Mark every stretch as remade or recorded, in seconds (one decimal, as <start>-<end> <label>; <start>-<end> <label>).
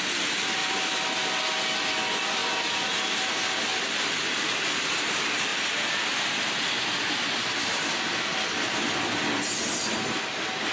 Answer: 0.0-0.6 recorded; 0.6-1.4 remade; 1.4-3.7 recorded; 3.7-4.9 remade; 4.9-5.5 recorded; 5.5-8.8 remade; 8.8-10.7 recorded